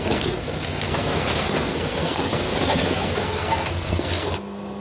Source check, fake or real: fake